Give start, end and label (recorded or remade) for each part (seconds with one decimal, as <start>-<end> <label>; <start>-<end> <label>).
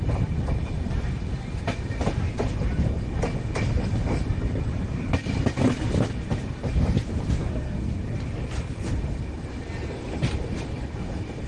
0.0-7.4 recorded; 7.4-8.0 remade; 8.0-11.5 recorded